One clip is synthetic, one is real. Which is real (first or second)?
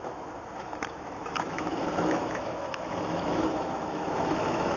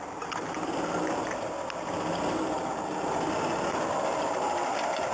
second